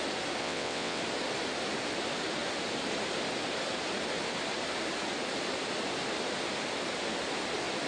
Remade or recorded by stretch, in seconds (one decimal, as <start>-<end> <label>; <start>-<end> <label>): 0.0-0.4 recorded; 0.4-1.0 remade; 1.0-7.9 recorded